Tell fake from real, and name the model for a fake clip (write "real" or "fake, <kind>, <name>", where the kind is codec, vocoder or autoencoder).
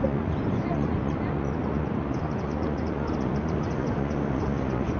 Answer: fake, vocoder, Vocos